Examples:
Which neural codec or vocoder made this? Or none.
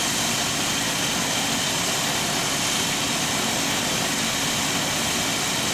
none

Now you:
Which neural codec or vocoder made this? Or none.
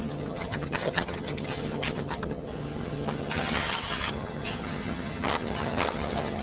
vocoder, HiFi-GAN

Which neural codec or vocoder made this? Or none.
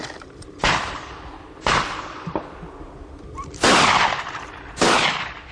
none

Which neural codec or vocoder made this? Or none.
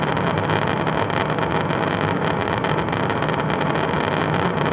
none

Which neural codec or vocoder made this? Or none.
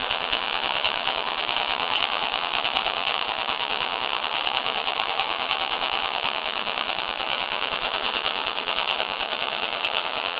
vocoder, WaveNeXt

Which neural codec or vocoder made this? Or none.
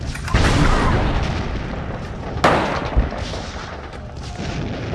none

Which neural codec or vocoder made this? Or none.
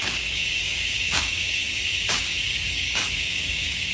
codec, DAC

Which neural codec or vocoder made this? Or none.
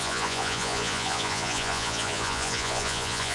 vocoder, Vocos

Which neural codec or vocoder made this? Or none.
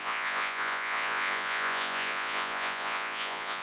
vocoder, Vocos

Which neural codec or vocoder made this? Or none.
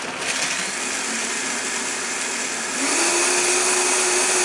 none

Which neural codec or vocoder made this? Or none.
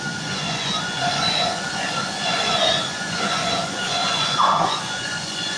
vocoder, Vocos